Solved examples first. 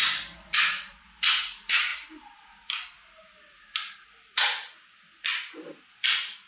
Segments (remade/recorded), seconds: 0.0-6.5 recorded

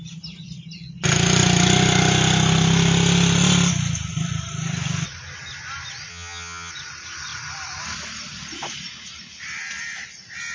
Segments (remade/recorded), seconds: 0.0-6.1 recorded; 6.1-6.7 remade; 6.7-10.5 recorded

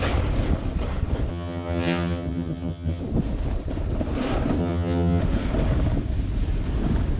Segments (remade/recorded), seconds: 0.0-1.3 recorded; 1.3-3.0 remade; 3.0-4.6 recorded; 4.6-5.2 remade; 5.2-7.2 recorded

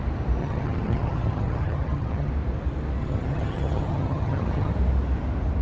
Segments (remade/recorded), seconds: 0.0-0.4 recorded; 0.4-2.3 remade; 2.3-3.0 recorded; 3.0-4.7 remade; 4.7-5.6 recorded

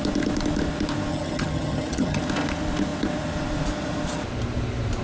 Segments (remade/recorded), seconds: 0.0-1.1 recorded; 1.1-2.2 remade; 2.2-5.0 recorded

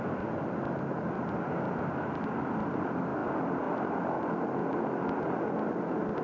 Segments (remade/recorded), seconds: 0.0-6.2 recorded

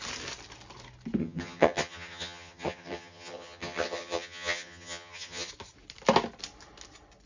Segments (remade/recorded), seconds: 0.0-1.2 recorded; 1.2-5.5 remade; 5.5-7.3 recorded